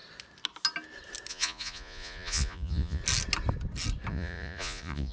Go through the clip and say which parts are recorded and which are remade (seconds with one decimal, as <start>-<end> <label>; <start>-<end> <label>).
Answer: 0.0-1.3 recorded; 1.3-3.0 remade; 3.0-4.1 recorded; 4.1-5.1 remade

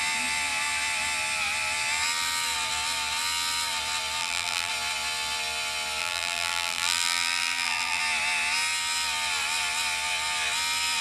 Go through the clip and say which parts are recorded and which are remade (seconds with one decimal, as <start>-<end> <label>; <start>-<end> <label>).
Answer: 0.0-4.2 recorded; 4.2-4.7 remade; 4.7-6.0 recorded; 6.0-8.0 remade; 8.0-11.0 recorded

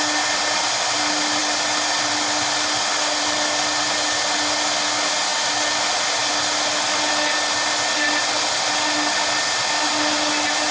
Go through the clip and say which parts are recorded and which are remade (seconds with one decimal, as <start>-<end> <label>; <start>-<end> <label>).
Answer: 0.0-10.7 recorded

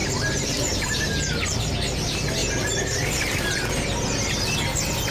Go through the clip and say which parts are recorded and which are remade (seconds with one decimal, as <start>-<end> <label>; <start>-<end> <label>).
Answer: 0.0-0.8 remade; 0.8-5.1 recorded

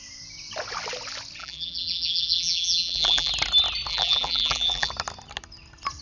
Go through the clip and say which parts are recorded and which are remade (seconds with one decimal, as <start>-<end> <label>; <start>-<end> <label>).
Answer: 0.0-1.4 recorded; 1.4-3.3 remade; 3.3-3.9 recorded; 3.9-4.9 remade; 4.9-6.0 recorded

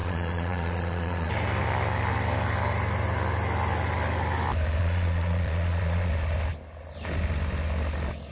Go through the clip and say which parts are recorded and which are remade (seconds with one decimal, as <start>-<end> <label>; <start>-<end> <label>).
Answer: 0.0-1.3 remade; 1.3-4.8 recorded; 4.8-6.1 remade; 6.1-8.3 recorded